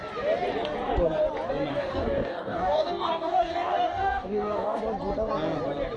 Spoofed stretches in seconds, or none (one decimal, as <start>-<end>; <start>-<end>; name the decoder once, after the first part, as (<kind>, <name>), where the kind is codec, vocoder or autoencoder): 1.7-4.8 (codec, DAC)